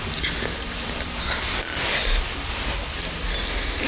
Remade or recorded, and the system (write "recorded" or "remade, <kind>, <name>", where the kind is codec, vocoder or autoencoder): recorded